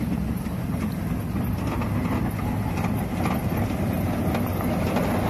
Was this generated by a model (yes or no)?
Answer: no